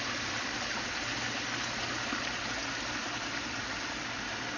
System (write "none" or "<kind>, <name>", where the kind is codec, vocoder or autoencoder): none